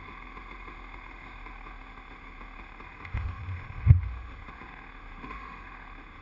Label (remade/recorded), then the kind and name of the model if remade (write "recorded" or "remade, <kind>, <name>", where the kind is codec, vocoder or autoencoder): remade, autoencoder, DAC-VAE